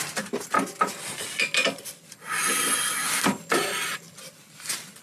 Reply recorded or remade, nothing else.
recorded